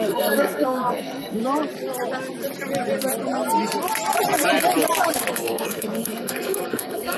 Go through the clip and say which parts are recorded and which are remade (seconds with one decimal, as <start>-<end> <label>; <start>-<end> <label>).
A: 0.0-1.4 remade; 1.4-5.3 recorded; 5.3-7.2 remade